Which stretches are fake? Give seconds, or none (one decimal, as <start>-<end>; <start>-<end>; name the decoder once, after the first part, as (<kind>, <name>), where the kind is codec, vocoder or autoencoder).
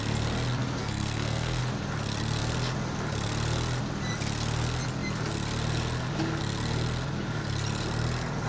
0.8-1.6 (codec, SNAC)